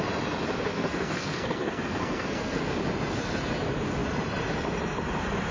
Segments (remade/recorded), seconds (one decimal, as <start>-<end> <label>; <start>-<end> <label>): 0.0-0.7 recorded; 0.7-2.6 remade; 2.6-5.5 recorded